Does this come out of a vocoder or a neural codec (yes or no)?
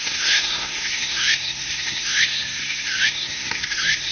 yes